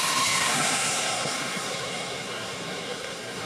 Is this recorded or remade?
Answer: remade